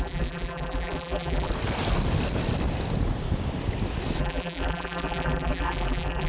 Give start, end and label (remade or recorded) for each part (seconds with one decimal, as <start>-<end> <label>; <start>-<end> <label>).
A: 0.0-1.5 remade; 1.5-4.2 recorded; 4.2-6.3 remade